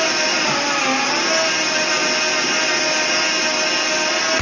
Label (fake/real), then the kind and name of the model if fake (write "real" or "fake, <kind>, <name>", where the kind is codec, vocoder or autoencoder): real